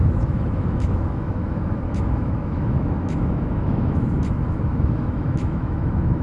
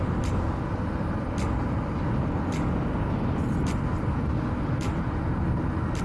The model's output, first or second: first